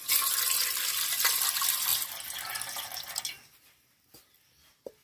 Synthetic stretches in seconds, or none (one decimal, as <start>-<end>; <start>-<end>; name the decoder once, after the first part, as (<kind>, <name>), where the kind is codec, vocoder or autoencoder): none